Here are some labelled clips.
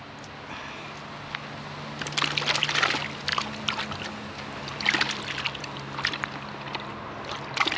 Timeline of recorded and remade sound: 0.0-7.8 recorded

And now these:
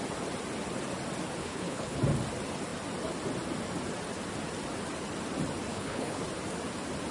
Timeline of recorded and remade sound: 0.0-1.4 recorded; 1.4-2.0 remade; 2.0-5.7 recorded; 5.7-6.2 remade; 6.2-7.1 recorded

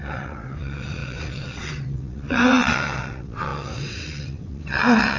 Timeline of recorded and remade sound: 0.0-5.2 remade

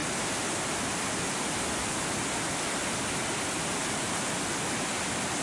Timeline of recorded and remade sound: 0.0-5.4 recorded

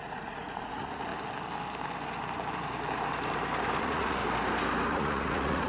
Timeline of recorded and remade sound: 0.0-1.1 remade; 1.1-3.8 recorded; 3.8-4.2 remade; 4.2-4.9 recorded; 4.9-5.7 remade

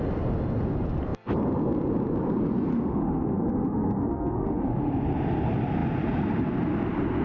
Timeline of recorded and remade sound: 0.0-2.7 recorded; 2.7-4.9 remade; 4.9-7.2 recorded